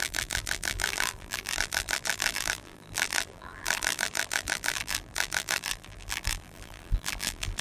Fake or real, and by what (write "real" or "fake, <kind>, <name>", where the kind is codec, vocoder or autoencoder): fake, vocoder, BigVGAN v2